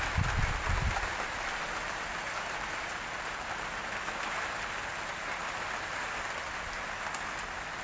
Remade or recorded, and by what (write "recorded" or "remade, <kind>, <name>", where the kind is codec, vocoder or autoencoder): recorded